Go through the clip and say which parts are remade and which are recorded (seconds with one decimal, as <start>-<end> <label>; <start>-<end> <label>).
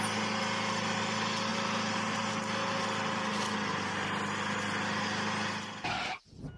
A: 0.0-1.5 recorded; 1.5-2.3 remade; 2.3-6.6 recorded